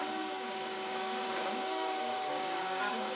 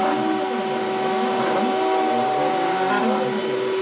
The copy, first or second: first